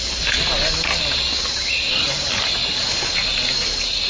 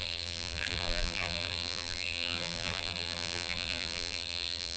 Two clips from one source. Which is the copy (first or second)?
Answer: second